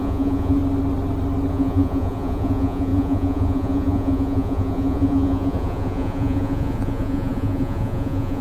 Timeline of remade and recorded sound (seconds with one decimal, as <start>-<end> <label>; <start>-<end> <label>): 0.0-0.6 remade; 0.6-1.5 recorded; 1.5-8.4 remade